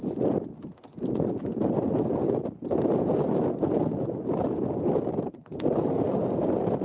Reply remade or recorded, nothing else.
recorded